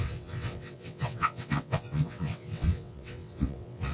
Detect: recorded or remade remade